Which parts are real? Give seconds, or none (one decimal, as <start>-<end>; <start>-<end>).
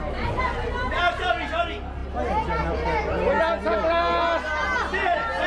0.0-5.5